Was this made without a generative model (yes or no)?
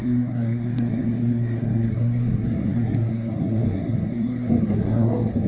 no